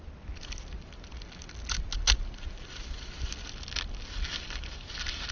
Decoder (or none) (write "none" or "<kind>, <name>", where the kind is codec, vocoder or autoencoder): none